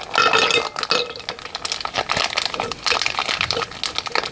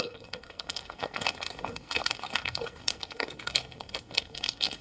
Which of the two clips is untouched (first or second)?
first